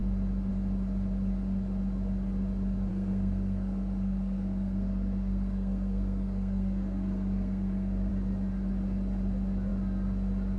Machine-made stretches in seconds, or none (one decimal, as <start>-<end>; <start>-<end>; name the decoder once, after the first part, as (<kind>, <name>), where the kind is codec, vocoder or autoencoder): 2.9-8.1 (codec, SNAC)